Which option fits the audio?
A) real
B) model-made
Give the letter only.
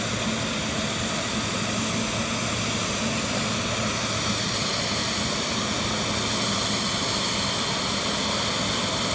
A